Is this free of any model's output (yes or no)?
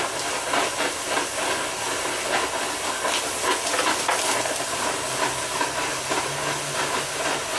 yes